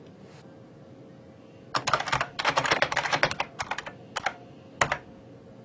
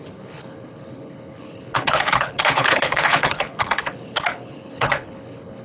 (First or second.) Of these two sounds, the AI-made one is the second